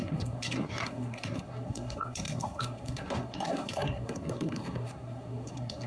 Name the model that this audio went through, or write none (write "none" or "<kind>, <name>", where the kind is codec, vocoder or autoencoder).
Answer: codec, SNAC